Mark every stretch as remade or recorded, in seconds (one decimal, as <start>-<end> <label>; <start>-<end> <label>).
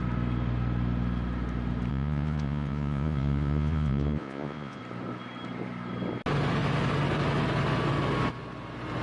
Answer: 0.0-1.9 recorded; 1.9-4.8 remade; 4.8-9.0 recorded